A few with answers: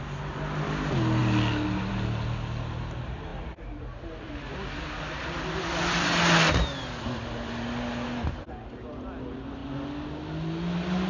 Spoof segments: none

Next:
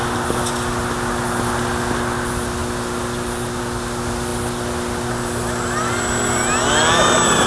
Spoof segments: none

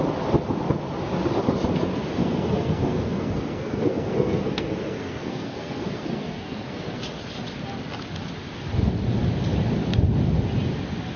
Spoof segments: 2.2-7.0

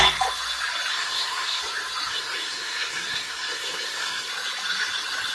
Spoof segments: 0.9-1.6; 2.1-4.3

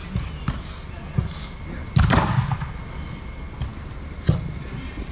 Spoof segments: none

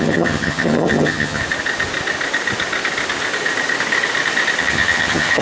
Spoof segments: 0.0-1.4; 4.6-5.4

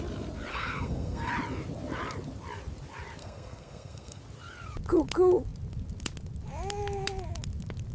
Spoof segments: 0.5-1.3; 3.2-4.2